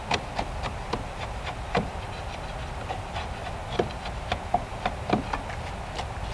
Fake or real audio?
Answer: real